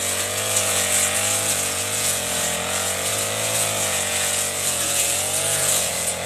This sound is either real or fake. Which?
fake